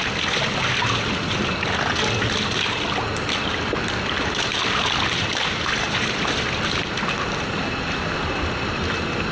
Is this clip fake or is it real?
real